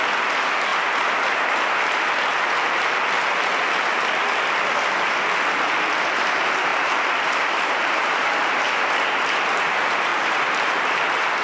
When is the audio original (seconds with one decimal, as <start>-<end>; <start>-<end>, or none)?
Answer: 0.0-6.7; 8.6-10.1; 11.0-11.4